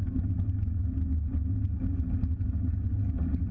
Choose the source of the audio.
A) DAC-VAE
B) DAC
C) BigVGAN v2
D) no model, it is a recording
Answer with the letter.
D